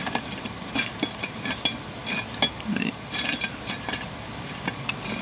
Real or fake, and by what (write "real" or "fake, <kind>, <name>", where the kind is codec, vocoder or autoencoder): real